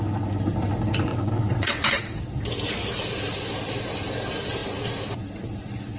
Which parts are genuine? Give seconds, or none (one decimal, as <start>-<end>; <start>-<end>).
0.0-1.1; 2.2-6.0